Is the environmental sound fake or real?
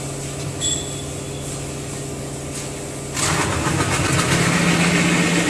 real